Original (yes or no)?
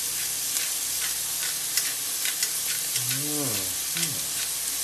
yes